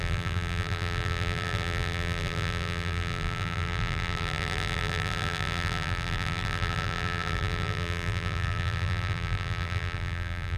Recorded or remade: remade